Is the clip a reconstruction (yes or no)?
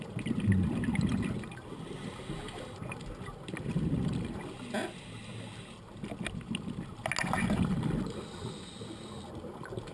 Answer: no